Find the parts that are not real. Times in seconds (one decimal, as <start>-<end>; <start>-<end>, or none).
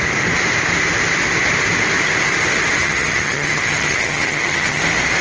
2.8-4.8